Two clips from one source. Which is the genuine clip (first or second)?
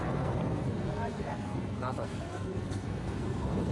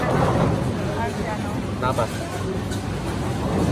second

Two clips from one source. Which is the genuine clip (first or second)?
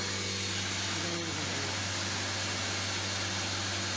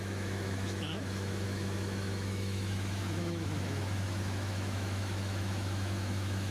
first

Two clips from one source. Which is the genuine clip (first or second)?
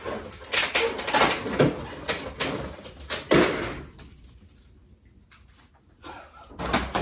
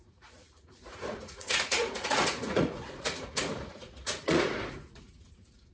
first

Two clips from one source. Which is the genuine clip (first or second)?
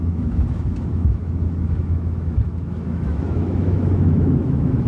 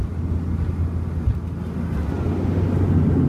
second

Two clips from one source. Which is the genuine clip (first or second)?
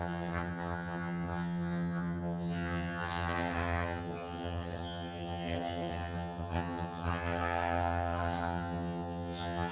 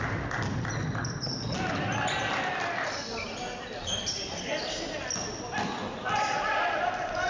second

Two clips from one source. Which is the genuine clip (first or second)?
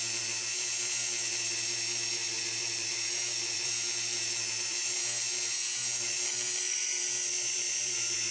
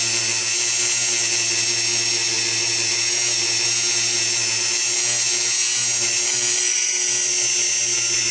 second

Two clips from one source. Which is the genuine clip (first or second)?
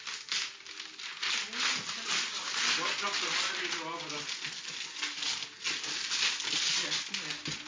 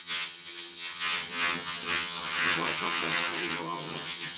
first